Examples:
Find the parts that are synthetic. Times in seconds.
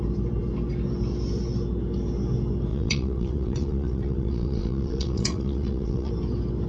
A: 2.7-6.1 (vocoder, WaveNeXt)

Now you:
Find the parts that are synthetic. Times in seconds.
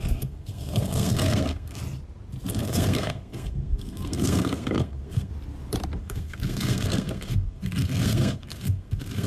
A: 0.0-1.8 (codec, SNAC); 2.5-5.3; 6.0-9.3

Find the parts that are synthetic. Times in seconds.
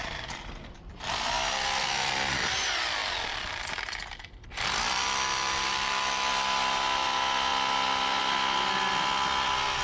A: none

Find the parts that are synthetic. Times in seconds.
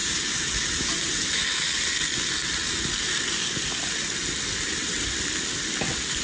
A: 0.0-1.1 (vocoder, BigVGAN v2)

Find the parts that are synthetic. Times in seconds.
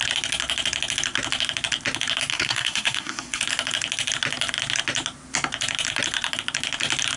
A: 2.3-3.4 (codec, SNAC)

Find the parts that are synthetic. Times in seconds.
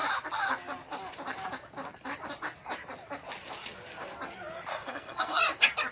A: 4.7-5.4 (codec, SNAC)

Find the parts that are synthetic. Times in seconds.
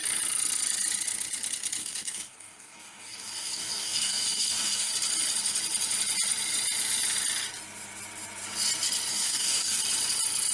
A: 1.8-4.9 (codec, DAC); 9.1-9.8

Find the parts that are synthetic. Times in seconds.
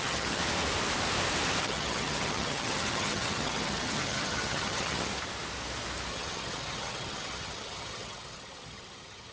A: 0.0-0.4 (vocoder, HiFi-GAN); 1.6-5.1; 6.1-9.3